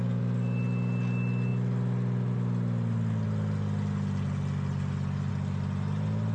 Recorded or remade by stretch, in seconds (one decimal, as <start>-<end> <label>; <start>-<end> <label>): 0.0-6.3 recorded